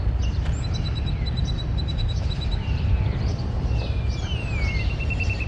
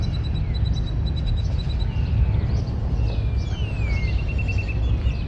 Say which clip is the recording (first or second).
second